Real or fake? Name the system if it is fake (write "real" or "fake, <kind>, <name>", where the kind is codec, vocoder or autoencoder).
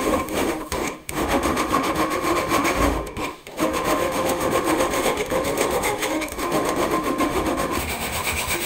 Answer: fake, autoencoder, DAC-VAE